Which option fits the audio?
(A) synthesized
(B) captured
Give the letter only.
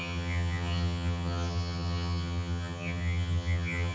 A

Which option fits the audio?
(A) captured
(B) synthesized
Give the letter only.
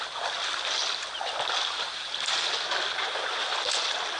A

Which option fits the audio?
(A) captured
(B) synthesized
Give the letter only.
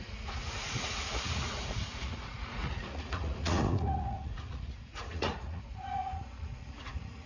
B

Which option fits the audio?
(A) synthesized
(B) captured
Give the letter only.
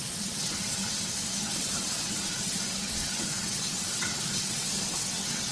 A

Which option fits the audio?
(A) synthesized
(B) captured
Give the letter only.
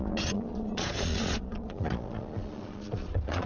A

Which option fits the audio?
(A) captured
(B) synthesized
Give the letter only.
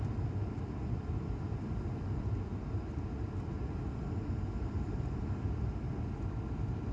B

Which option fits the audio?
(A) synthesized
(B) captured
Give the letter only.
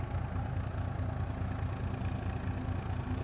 B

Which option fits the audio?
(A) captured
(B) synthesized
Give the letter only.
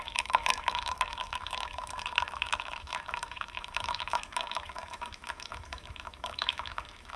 B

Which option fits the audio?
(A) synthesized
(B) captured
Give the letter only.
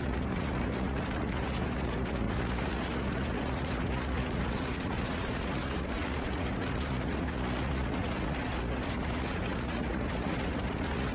A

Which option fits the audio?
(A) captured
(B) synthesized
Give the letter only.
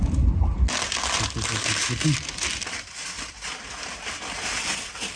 A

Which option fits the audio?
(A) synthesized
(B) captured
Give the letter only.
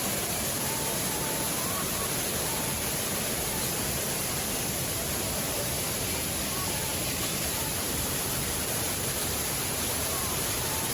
A